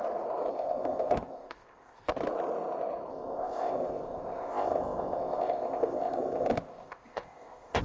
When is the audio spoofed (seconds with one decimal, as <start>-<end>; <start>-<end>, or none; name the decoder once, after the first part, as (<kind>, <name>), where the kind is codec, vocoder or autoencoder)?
0.5-2.0 (codec, ZipCodec); 3.1-7.8